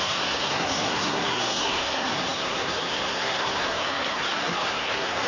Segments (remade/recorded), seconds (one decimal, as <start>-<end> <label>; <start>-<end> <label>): 0.0-5.3 remade